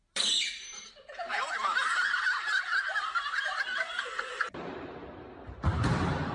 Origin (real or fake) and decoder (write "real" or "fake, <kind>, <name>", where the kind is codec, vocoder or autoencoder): fake, vocoder, BigVGAN v2